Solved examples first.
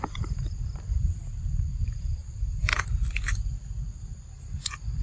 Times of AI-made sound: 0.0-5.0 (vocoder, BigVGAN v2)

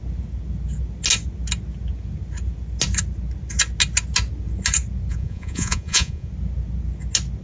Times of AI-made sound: 5.1-6.3 (vocoder, Vocos)

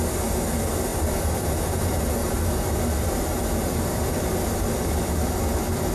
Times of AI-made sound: 0.9-1.5 (vocoder, BigVGAN v2); 2.2-5.4

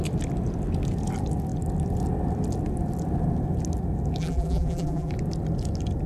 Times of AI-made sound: 4.2-5.1 (vocoder, BigVGAN v2)

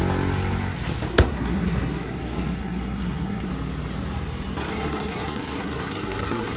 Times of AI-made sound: 1.1-3.5 (codec, SNAC); 4.7-6.6

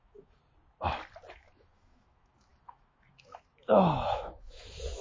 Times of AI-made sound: 0.0-0.4 (autoencoder, DAC-VAE); 1.3-5.0